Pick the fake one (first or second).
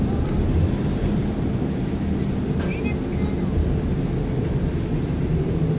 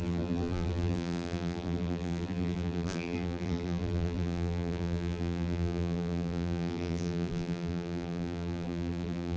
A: second